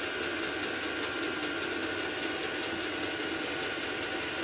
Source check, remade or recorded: recorded